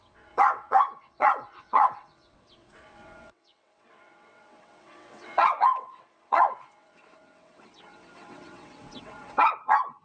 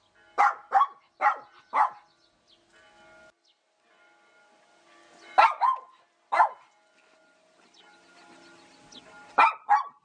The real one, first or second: second